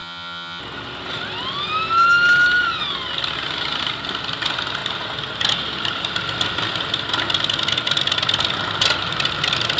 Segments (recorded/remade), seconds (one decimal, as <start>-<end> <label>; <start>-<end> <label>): 0.0-0.6 remade; 0.6-9.8 recorded